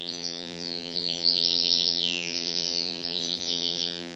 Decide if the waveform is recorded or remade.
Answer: remade